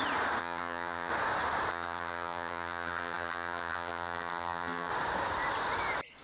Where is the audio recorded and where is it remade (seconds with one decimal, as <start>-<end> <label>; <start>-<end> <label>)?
0.0-0.4 recorded; 0.4-1.1 remade; 1.1-1.7 recorded; 1.7-4.9 remade; 4.9-6.2 recorded